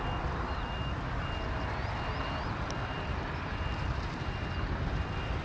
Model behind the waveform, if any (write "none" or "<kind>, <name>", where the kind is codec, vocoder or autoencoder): none